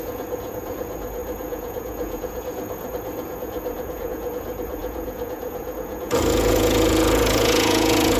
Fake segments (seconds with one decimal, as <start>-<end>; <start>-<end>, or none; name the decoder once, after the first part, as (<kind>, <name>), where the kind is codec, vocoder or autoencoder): 0.0-8.2 (vocoder, Vocos)